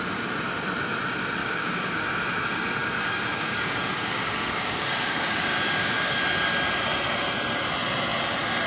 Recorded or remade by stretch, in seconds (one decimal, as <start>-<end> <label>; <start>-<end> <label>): 0.0-1.4 recorded; 1.4-2.0 remade; 2.0-2.8 recorded; 2.8-6.2 remade; 6.2-8.7 recorded